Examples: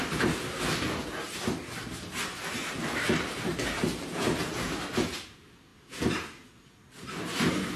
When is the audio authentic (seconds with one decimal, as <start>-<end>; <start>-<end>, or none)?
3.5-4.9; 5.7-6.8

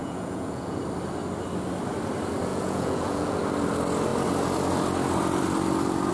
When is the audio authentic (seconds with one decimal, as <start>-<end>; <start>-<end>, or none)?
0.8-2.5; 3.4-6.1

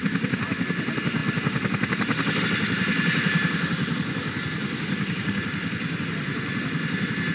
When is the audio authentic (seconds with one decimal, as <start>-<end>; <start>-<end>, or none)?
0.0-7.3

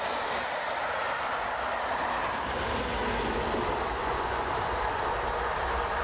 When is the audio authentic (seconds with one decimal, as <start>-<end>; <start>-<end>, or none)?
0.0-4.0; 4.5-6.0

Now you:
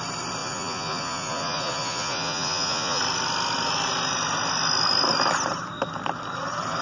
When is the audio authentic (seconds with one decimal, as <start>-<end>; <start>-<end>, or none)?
0.0-0.4; 3.0-6.8